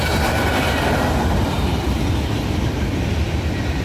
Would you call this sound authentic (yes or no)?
no